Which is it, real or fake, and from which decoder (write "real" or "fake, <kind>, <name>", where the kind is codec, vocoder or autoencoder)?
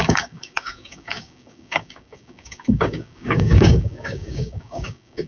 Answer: fake, codec, DAC